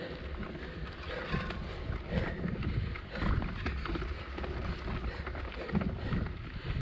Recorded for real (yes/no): yes